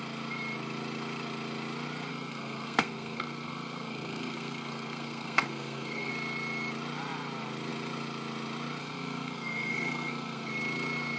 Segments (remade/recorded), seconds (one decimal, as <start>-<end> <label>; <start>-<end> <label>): 0.0-2.1 recorded; 2.1-6.1 remade; 6.1-8.8 recorded; 8.8-10.5 remade; 10.5-11.2 recorded